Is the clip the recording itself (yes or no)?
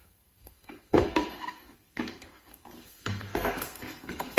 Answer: no